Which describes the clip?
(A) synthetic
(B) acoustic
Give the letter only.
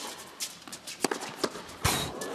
B